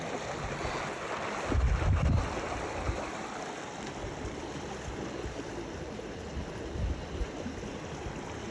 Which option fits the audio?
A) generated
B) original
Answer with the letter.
B